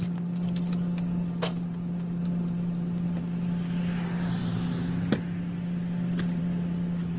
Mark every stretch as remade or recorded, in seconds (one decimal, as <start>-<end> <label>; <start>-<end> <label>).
0.0-7.2 recorded